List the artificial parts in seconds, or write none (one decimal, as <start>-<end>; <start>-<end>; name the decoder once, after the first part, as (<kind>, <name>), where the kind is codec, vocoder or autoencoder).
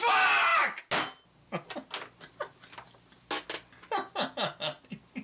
none